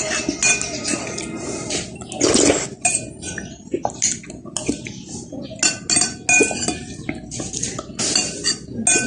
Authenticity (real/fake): real